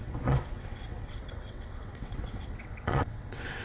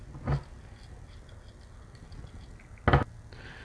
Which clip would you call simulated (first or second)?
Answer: first